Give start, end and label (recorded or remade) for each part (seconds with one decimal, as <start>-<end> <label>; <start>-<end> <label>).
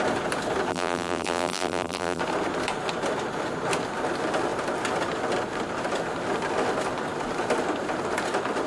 0.0-0.7 recorded; 0.7-2.2 remade; 2.2-8.7 recorded